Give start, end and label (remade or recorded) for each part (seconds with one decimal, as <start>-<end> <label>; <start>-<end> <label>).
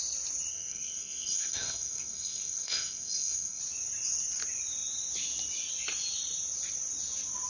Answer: 0.0-0.5 recorded; 0.5-3.6 remade; 3.6-7.5 recorded